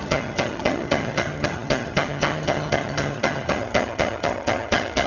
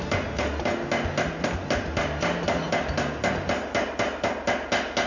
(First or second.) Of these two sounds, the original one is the second